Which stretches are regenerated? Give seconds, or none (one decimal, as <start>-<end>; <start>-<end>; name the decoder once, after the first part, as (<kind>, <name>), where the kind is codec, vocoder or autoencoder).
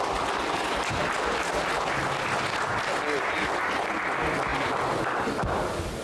none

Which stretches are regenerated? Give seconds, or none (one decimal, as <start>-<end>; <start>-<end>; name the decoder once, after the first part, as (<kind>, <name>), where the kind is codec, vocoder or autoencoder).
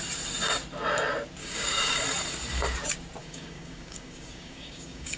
1.4-2.0 (codec, DAC); 3.2-5.2